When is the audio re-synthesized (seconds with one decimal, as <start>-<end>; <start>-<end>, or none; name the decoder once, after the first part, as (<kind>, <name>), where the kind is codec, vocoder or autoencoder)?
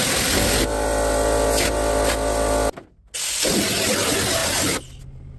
none